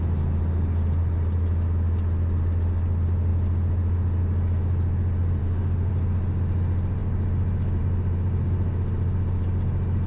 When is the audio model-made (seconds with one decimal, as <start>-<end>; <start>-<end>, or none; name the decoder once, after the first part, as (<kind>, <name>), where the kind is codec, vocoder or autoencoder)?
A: 5.4-5.9 (autoencoder, DAC-VAE)